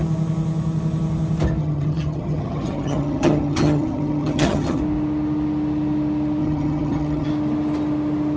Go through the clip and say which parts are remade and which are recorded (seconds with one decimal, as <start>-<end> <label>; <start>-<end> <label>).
0.0-1.6 recorded; 1.6-4.8 remade; 4.8-6.4 recorded; 6.4-7.3 remade; 7.3-8.4 recorded